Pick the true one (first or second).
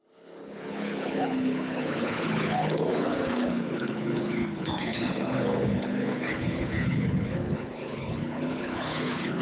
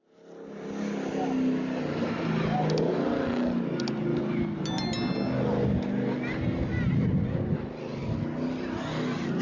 second